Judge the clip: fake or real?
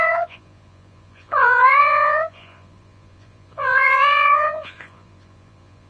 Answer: fake